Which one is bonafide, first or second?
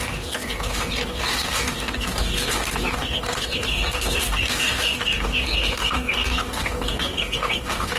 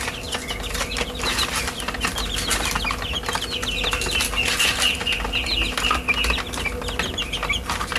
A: second